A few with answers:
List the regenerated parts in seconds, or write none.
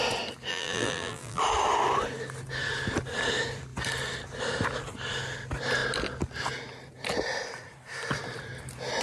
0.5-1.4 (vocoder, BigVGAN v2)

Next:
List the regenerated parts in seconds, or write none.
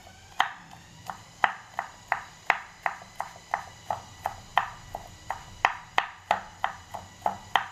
0.0-2.3 (vocoder, BigVGAN v2)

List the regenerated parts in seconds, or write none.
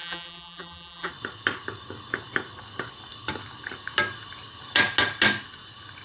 0.0-1.1 (vocoder, BigVGAN v2)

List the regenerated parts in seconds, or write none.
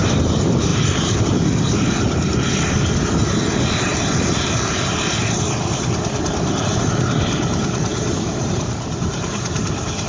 0.7-1.2 (vocoder, BigVGAN v2); 3.9-5.2; 7.9-10.1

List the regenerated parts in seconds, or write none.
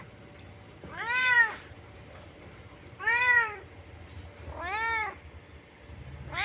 1.2-4.2 (vocoder, BigVGAN v2); 5.0-5.8